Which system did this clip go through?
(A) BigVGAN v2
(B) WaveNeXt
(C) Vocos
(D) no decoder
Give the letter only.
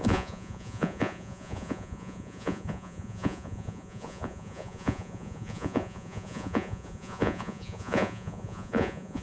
C